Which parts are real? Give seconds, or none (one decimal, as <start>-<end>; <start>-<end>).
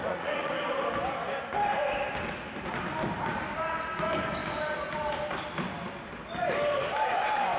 0.5-7.6